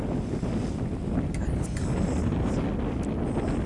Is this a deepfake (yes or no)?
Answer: no